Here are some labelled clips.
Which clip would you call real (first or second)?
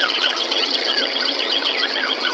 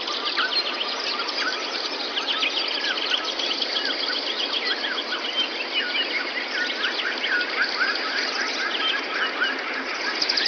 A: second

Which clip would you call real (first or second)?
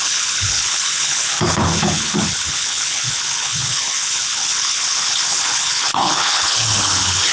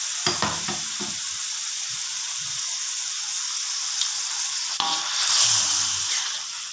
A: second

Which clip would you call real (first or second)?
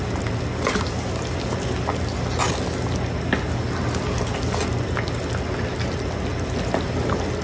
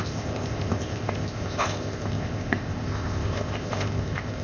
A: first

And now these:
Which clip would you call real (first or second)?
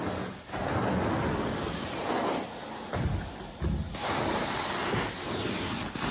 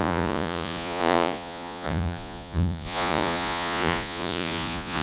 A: first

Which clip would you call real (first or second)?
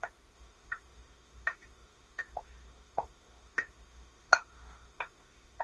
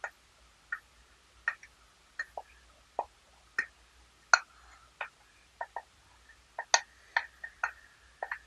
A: second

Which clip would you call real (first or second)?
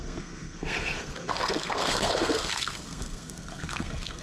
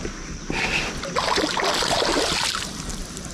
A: second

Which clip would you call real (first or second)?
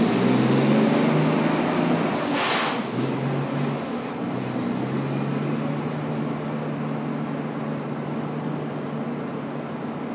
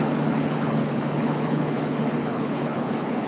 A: first